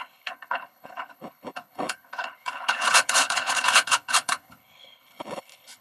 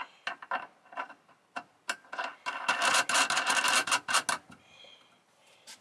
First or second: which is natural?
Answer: second